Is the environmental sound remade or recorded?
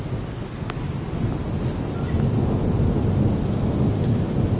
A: recorded